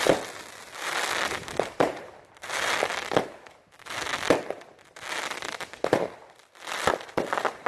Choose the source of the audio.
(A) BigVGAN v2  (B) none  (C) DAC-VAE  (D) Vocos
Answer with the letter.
B